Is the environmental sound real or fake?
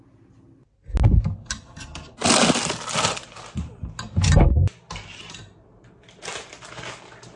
real